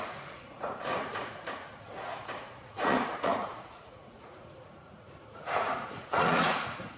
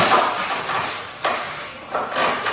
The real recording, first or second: second